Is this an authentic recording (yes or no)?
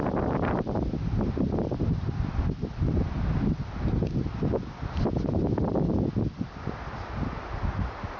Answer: yes